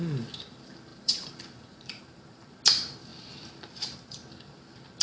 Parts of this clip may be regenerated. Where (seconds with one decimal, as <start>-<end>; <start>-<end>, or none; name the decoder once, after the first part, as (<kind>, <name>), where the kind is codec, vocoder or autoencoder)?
0.9-2.0 (vocoder, BigVGAN v2)